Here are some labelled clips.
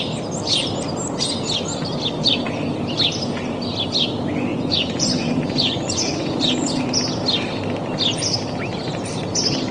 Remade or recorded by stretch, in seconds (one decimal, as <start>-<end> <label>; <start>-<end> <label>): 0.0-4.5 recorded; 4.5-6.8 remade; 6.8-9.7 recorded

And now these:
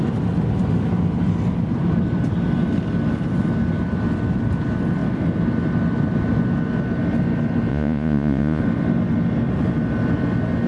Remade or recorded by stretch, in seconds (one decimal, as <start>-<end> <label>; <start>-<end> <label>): 0.0-7.7 recorded; 7.7-8.6 remade; 8.6-10.7 recorded

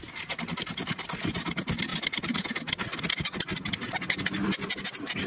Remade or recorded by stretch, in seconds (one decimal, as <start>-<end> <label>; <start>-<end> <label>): 0.0-5.3 recorded

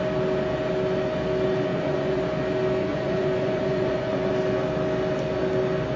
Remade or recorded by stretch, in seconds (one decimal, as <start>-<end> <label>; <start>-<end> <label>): 0.0-1.7 recorded; 1.7-2.2 remade; 2.2-2.9 recorded; 2.9-4.3 remade; 4.3-6.0 recorded

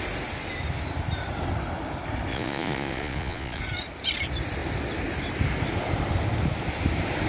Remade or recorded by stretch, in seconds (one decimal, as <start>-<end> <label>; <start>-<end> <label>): 0.0-2.3 recorded; 2.3-3.6 remade; 3.6-7.3 recorded

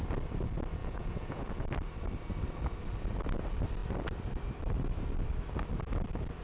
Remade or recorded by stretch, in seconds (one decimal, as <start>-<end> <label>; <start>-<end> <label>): 0.0-0.8 recorded; 0.8-1.5 remade; 1.5-6.4 recorded

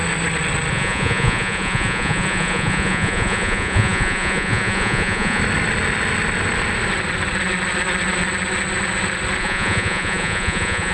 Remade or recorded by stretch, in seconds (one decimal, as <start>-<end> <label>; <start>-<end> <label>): 0.0-0.7 recorded; 0.7-5.4 remade; 5.4-9.4 recorded; 9.4-10.9 remade

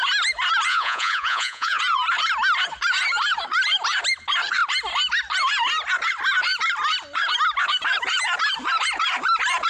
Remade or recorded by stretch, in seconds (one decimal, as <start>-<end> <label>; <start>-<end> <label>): 0.0-0.7 recorded; 0.7-1.8 remade; 1.8-9.7 recorded